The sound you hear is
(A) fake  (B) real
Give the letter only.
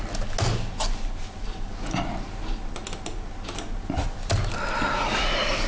B